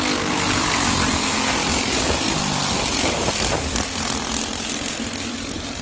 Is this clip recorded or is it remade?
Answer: recorded